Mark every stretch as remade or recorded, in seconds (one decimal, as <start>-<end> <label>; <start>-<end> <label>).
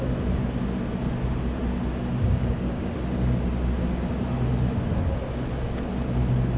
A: 0.0-2.1 recorded; 2.1-2.9 remade; 2.9-6.6 recorded